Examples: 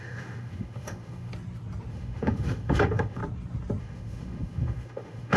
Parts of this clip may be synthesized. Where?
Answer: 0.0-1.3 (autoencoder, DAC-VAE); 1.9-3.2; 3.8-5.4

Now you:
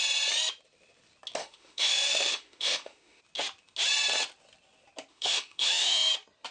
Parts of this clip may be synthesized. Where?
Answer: 1.4-3.2 (autoencoder, DAC-VAE); 5.1-6.1

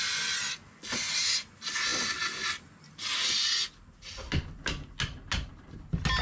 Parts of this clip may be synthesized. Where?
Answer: none

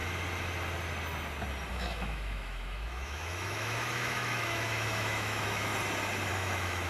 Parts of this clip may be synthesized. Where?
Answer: 1.7-5.7 (autoencoder, DAC-VAE); 6.3-6.9

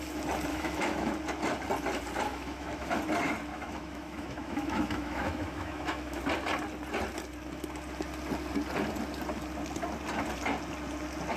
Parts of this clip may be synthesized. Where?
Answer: 0.5-1.1 (autoencoder, DAC-VAE); 2.3-3.0; 3.5-6.2